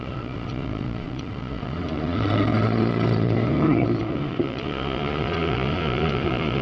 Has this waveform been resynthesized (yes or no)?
yes